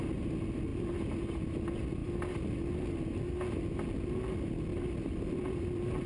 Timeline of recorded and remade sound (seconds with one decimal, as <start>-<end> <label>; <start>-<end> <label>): 0.0-0.7 recorded; 0.7-1.3 remade; 1.3-2.0 recorded; 2.0-2.5 remade; 2.5-4.7 recorded; 4.7-6.1 remade